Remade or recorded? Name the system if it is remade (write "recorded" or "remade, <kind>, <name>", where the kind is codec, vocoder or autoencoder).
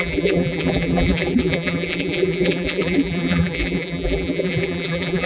remade, vocoder, BigVGAN v2